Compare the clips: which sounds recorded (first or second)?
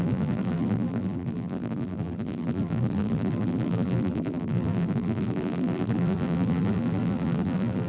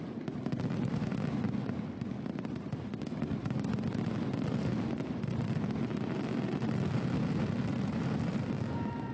second